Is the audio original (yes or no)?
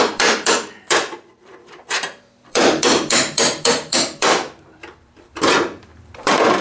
no